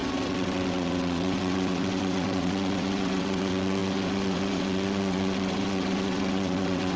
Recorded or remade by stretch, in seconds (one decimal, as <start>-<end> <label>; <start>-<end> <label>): 0.0-7.0 remade